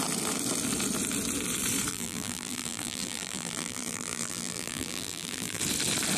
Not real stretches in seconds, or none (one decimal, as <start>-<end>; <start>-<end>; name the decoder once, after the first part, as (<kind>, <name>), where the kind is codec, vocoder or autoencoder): 1.9-5.6 (vocoder, BigVGAN v2)